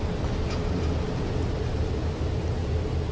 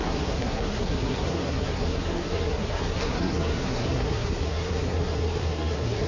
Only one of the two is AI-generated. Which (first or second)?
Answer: second